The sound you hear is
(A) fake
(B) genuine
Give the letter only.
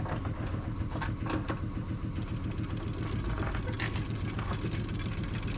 B